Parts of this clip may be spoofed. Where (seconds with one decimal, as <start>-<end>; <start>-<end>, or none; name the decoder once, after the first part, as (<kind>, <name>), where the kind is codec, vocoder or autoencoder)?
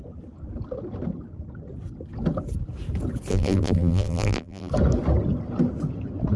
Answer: 3.3-4.7 (vocoder, BigVGAN v2)